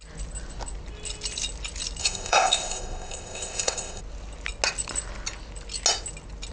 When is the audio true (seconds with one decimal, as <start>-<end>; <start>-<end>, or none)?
0.0-2.0; 4.0-6.5